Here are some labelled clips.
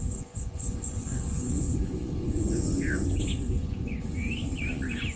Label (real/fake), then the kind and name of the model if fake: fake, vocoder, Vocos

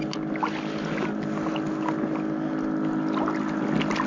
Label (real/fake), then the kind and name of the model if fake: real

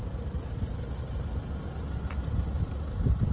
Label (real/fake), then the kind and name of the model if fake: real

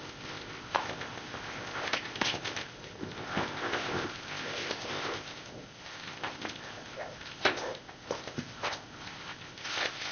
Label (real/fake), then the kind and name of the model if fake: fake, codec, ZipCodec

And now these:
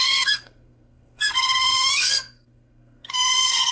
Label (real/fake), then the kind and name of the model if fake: fake, codec, SNAC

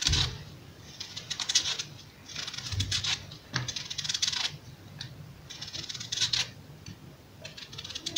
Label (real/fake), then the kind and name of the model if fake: real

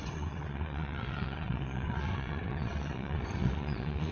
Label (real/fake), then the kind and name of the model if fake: fake, vocoder, WaveNeXt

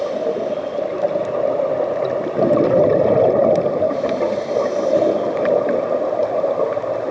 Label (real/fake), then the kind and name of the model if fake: real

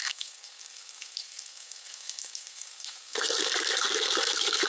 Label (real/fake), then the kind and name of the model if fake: fake, codec, SNAC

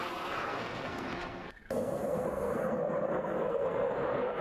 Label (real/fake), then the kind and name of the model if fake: fake, codec, SNAC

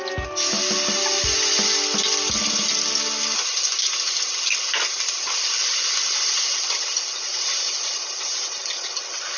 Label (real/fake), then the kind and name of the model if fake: real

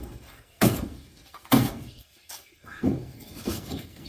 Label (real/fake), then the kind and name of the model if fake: fake, codec, SNAC